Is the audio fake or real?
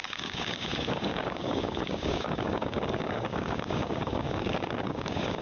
fake